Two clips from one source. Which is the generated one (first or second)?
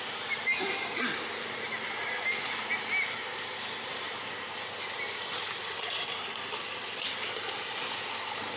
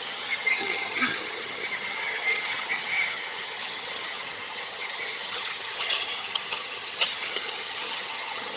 second